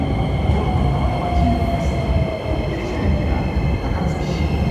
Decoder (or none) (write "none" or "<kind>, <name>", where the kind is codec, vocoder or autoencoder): none